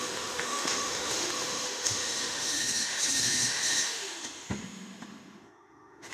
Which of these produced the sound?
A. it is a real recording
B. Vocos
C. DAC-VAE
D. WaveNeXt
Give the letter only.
C